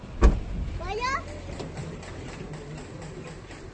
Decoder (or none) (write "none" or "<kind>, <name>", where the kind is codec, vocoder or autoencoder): none